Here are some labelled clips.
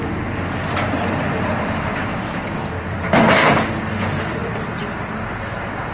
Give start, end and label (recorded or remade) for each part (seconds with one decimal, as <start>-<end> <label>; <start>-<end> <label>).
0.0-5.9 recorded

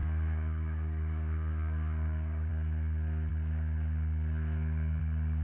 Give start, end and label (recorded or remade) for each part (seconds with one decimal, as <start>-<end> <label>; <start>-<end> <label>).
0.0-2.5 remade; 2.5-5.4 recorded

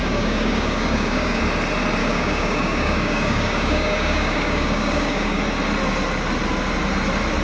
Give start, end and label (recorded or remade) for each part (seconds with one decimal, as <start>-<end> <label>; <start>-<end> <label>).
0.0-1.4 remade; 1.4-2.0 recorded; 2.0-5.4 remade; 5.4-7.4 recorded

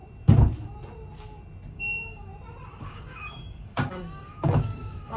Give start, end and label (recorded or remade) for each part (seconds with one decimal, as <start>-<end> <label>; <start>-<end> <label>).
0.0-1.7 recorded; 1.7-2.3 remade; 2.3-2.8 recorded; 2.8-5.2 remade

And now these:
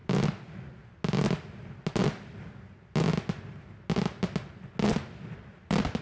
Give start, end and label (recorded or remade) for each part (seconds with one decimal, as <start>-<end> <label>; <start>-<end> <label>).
0.0-6.0 recorded

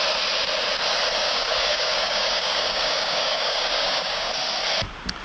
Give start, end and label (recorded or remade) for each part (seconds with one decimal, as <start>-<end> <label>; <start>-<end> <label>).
0.0-1.2 recorded; 1.2-4.3 remade; 4.3-5.2 recorded